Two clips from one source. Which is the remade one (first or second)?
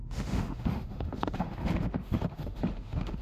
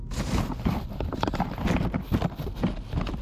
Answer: first